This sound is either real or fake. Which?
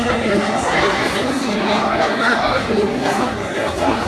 fake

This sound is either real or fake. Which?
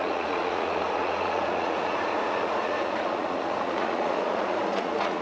fake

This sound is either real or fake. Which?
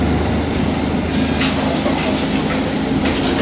real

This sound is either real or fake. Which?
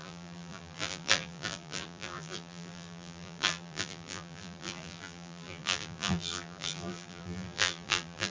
fake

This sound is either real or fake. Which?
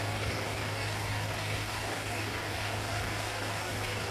fake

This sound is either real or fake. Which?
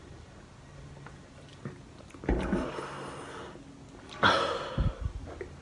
real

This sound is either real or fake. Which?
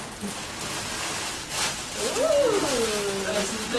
real